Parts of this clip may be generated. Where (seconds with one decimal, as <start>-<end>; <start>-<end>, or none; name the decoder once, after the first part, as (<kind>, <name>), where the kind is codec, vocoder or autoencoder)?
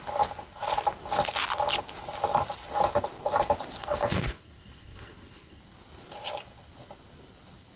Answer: 3.8-5.6 (codec, SNAC)